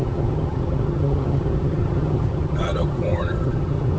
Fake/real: fake